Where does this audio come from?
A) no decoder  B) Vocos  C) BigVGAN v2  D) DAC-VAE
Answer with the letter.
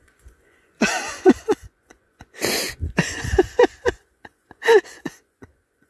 B